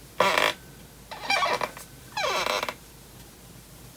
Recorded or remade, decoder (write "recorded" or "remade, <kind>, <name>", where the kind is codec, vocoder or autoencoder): remade, vocoder, BigVGAN v2